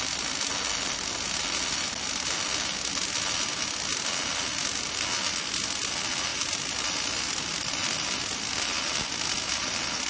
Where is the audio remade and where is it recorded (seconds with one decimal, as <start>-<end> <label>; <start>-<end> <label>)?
0.0-10.1 recorded